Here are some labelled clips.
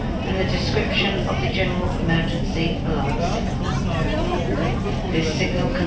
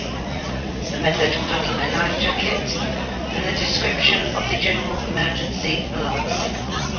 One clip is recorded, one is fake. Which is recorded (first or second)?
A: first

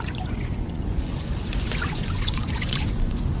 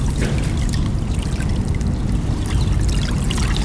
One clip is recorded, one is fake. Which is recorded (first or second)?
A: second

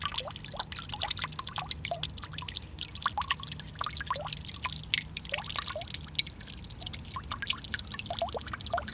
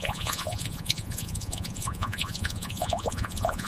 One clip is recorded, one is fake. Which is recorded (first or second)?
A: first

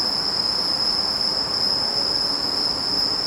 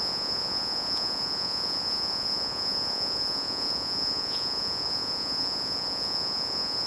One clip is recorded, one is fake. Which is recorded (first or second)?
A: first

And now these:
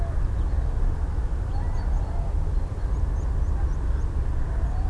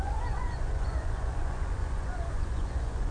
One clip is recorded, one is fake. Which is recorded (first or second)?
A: first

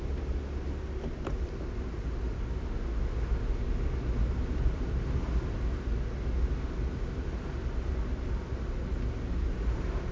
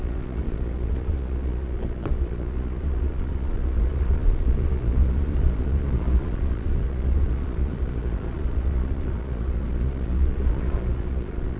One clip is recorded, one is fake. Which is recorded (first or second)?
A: first